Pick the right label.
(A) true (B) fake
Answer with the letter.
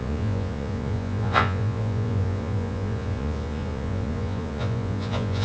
B